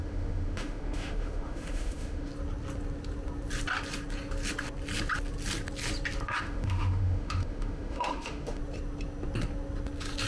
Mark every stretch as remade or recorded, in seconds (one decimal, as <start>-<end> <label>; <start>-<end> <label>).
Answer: 0.0-2.3 remade; 2.3-6.4 recorded; 6.4-8.6 remade; 8.6-10.3 recorded